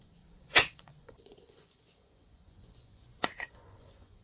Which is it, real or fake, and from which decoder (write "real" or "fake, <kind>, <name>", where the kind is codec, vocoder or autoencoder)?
fake, vocoder, Vocos